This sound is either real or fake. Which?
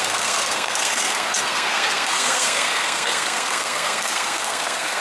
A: fake